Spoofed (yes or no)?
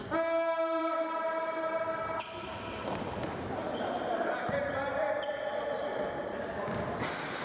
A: yes